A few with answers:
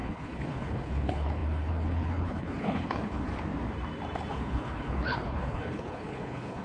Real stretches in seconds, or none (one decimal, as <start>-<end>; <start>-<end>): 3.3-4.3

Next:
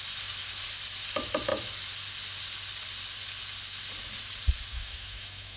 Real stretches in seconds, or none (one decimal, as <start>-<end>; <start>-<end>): 0.0-4.7

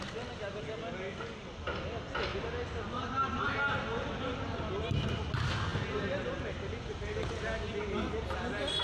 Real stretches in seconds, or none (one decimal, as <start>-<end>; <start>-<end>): 0.0-8.8

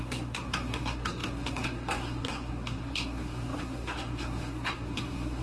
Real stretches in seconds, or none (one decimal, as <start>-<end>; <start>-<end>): none